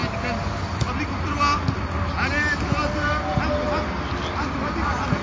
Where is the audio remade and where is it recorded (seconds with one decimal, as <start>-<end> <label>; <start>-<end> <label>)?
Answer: 0.0-5.2 recorded